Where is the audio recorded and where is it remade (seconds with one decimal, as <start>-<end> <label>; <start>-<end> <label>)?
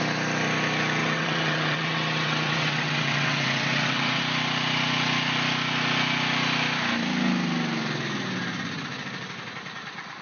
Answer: 0.0-1.0 recorded; 1.0-4.2 remade; 4.2-10.2 recorded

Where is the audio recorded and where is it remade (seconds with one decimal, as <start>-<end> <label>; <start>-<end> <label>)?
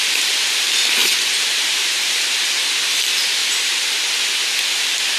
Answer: 0.0-1.0 recorded; 1.0-2.7 remade; 2.7-3.4 recorded; 3.4-4.0 remade; 4.0-5.2 recorded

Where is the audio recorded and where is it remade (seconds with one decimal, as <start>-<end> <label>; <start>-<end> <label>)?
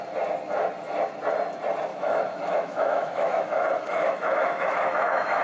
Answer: 0.0-1.9 recorded; 1.9-5.4 remade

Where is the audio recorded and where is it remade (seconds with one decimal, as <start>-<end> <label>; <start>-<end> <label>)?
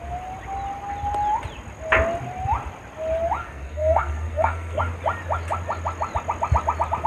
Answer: 0.0-3.4 recorded; 3.4-4.8 remade; 4.8-7.1 recorded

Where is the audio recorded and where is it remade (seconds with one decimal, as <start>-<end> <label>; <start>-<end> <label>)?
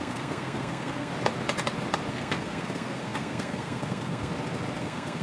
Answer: 0.0-1.1 remade; 1.1-2.1 recorded; 2.1-4.3 remade; 4.3-4.8 recorded; 4.8-5.2 remade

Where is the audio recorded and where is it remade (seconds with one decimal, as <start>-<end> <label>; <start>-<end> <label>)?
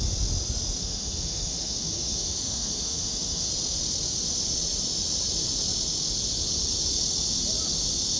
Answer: 0.0-0.8 recorded; 0.8-3.5 remade; 3.5-8.2 recorded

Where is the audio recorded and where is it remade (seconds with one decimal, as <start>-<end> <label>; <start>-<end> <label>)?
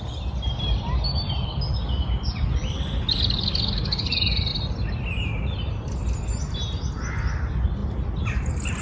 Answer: 0.0-8.8 recorded